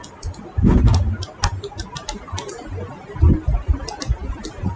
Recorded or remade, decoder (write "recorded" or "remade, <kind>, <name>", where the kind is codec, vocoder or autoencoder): recorded